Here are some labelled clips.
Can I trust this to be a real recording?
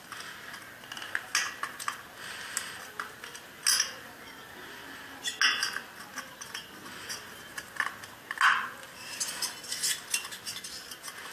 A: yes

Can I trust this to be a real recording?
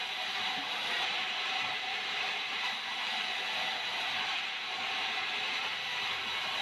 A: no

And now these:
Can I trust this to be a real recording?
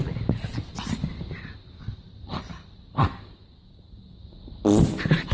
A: yes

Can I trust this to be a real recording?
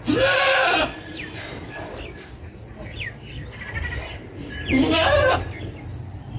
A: yes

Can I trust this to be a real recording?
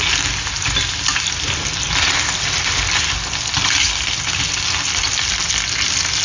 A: yes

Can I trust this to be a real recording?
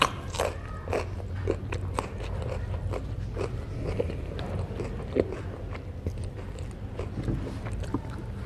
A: yes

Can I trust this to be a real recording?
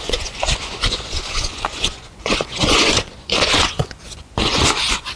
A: no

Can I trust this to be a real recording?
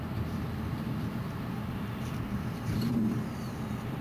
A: no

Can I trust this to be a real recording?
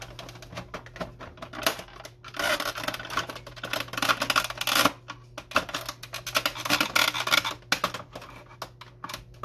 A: yes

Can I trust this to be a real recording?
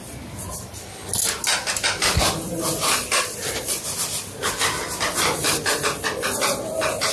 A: yes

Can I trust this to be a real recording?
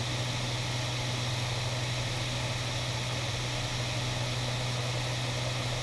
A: yes